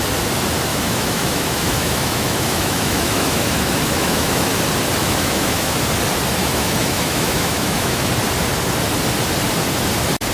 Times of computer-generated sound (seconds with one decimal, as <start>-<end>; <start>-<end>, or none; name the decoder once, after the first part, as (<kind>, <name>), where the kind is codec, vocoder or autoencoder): 0.7-4.6 (autoencoder, DAC-VAE); 5.0-5.9; 6.4-8.1